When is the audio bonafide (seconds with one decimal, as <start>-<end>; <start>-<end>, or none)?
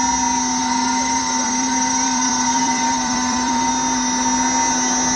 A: 0.0-0.6; 3.7-5.2